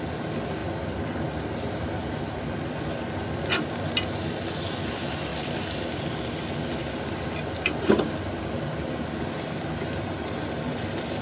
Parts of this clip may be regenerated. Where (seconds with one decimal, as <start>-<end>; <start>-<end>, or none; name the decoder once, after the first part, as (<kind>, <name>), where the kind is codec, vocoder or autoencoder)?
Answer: 0.6-2.7 (vocoder, BigVGAN v2); 5.3-6.0; 6.8-8.4